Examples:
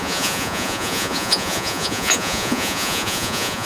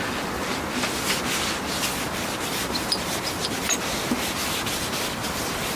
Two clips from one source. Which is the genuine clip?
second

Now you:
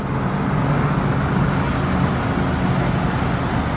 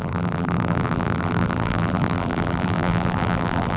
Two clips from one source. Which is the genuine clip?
first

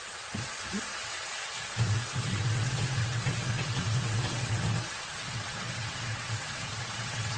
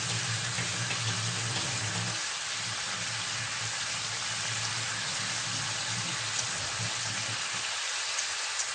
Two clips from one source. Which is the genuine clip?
second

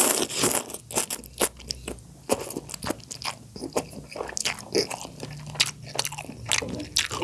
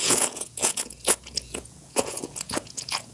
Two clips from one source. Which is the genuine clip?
first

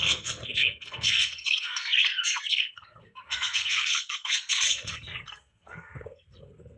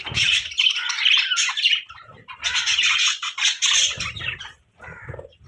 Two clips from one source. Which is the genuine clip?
second